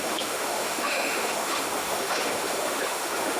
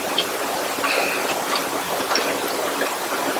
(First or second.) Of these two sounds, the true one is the second